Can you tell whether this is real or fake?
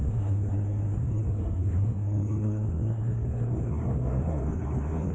fake